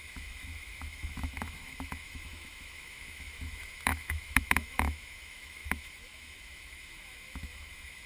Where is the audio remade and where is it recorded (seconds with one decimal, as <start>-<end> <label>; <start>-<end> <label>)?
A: 0.0-8.1 remade